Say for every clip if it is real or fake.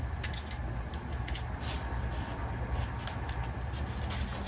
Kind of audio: real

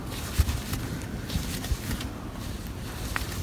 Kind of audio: real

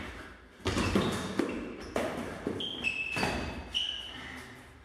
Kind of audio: real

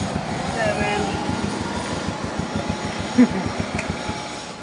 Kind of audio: real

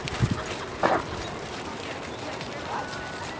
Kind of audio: real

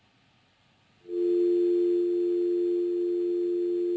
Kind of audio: real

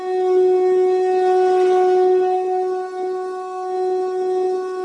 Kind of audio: real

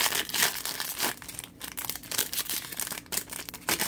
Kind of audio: fake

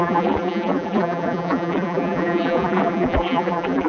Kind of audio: fake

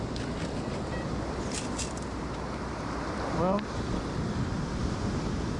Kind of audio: fake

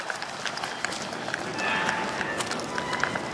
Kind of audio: real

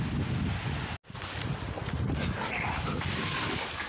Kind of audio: real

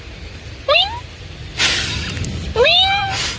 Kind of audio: fake